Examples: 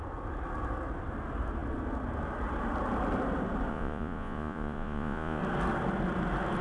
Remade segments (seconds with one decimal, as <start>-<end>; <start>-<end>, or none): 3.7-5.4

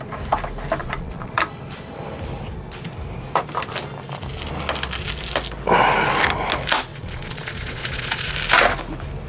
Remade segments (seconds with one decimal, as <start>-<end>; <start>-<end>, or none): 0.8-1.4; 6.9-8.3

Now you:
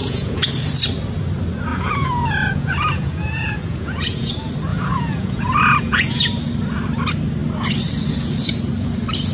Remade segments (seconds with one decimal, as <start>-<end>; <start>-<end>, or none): 0.0-0.5; 1.7-4.3; 4.7-6.2

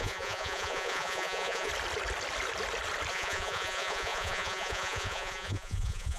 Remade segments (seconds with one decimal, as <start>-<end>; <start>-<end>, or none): 0.0-1.7; 3.1-6.2